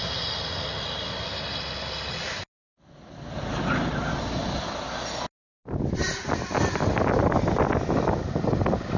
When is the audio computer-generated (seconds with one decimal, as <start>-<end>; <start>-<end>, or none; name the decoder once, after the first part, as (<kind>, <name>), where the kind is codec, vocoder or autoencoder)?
none